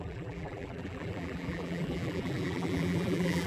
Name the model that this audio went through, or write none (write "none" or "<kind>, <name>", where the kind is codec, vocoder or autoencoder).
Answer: vocoder, BigVGAN v2